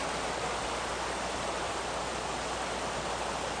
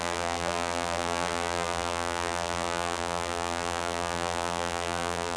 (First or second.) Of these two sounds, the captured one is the first